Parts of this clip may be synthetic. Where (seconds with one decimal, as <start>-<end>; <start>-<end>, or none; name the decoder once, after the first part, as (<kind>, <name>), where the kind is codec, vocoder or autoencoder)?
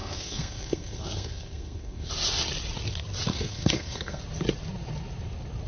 0.0-2.1 (codec, SNAC); 3.3-4.2